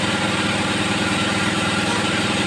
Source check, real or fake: fake